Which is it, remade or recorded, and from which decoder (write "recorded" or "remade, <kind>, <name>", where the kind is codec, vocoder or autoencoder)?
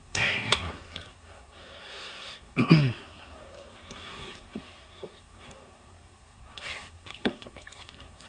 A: remade, codec, SNAC